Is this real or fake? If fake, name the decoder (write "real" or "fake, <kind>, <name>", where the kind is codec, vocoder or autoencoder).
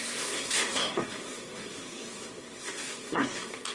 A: fake, codec, SNAC